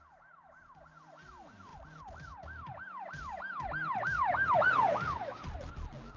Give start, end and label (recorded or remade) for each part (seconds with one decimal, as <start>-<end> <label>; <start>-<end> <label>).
0.0-6.2 recorded